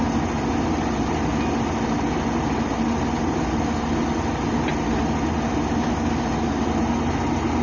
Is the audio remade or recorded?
recorded